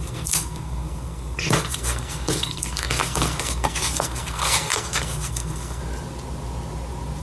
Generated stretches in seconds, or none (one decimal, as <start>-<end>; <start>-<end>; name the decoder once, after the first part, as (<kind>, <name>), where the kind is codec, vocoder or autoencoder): 0.0-5.8 (codec, SNAC)